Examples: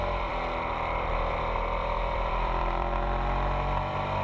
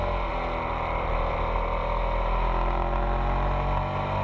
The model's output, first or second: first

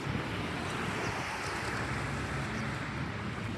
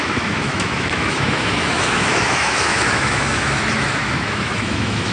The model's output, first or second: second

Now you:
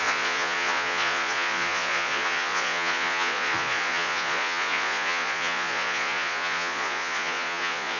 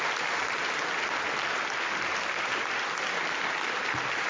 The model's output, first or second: first